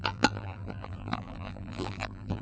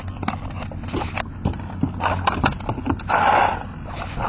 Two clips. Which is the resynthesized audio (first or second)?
first